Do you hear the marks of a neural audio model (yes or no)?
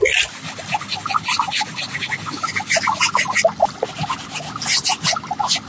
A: no